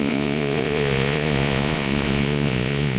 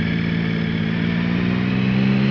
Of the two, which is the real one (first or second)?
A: second